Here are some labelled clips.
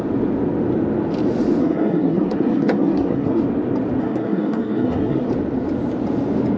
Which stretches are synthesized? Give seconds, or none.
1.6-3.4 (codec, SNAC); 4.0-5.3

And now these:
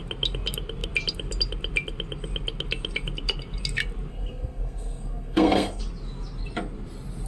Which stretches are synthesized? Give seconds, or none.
4.1-5.8 (codec, SNAC)